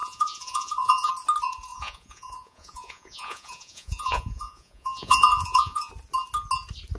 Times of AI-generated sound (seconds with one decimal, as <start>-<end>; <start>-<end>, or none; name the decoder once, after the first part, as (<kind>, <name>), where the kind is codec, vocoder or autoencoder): 0.0-1.1 (vocoder, Vocos); 1.7-5.9